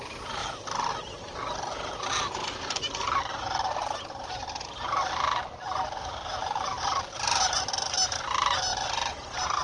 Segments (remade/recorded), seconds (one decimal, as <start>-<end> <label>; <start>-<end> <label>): 0.0-9.6 recorded